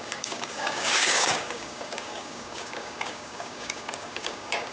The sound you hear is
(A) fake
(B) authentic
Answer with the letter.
A